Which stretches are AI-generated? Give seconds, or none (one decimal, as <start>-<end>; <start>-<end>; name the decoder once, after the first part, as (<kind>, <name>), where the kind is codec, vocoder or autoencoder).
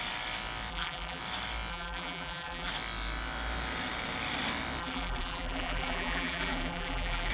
0.7-1.2 (vocoder, BigVGAN v2); 1.7-2.7; 4.8-7.3